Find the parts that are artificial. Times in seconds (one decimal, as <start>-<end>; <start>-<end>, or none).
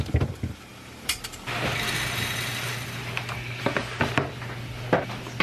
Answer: none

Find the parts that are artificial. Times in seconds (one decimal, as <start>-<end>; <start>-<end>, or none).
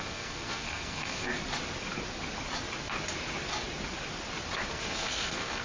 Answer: 0.0-1.3; 4.7-5.6